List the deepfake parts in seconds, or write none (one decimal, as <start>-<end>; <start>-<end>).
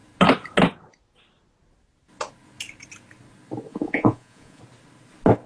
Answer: 3.7-4.6